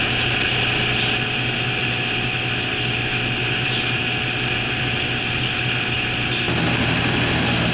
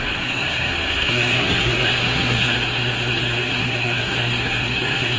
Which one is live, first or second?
first